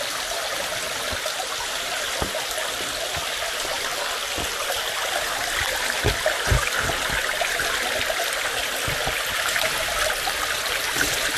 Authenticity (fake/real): real